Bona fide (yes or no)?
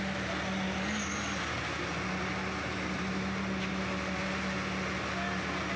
yes